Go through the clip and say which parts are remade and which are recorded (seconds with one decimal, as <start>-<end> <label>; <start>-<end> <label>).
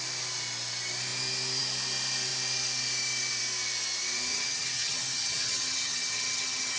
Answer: 0.0-4.3 recorded; 4.3-6.8 remade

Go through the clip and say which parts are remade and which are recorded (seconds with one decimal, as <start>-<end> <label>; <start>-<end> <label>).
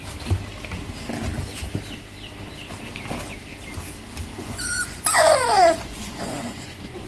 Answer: 0.0-4.3 recorded; 4.3-7.1 remade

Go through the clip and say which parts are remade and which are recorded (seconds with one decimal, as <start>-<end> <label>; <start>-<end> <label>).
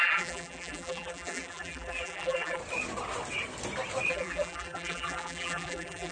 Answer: 0.0-2.6 remade; 2.6-4.1 recorded; 4.1-6.1 remade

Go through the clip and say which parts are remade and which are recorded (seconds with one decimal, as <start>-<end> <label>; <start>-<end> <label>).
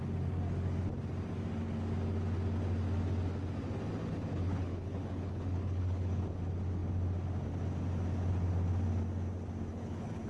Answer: 0.0-4.3 recorded; 4.3-6.2 remade; 6.2-9.7 recorded; 9.7-10.3 remade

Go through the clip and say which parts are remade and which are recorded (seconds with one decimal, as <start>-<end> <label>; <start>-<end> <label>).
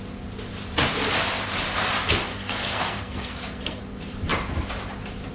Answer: 0.0-2.3 recorded; 2.3-3.8 remade; 3.8-5.3 recorded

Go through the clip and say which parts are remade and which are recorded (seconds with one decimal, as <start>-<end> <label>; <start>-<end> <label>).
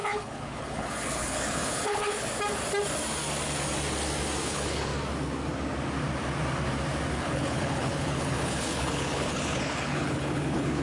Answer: 0.0-2.3 remade; 2.3-4.4 recorded; 4.4-4.9 remade; 4.9-7.1 recorded; 7.1-10.8 remade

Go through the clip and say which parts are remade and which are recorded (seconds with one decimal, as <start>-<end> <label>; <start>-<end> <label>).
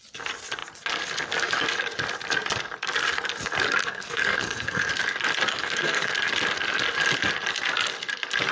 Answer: 0.0-3.8 recorded; 3.8-4.9 remade; 4.9-5.5 recorded; 5.5-6.1 remade; 6.1-8.5 recorded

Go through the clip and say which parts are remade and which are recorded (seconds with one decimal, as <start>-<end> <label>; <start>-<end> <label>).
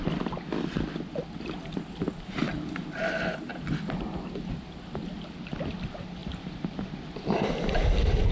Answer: 0.0-8.3 recorded